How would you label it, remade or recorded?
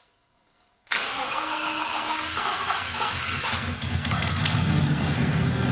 remade